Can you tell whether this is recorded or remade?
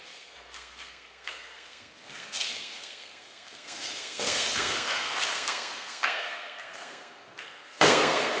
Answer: remade